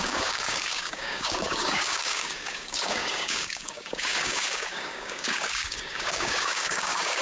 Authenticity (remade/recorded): remade